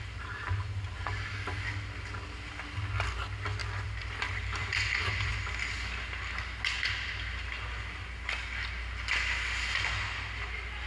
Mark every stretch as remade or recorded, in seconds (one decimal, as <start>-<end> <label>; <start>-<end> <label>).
0.0-3.6 recorded; 3.6-5.3 remade; 5.3-10.9 recorded